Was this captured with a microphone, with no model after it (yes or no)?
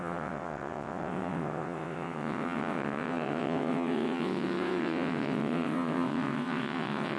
no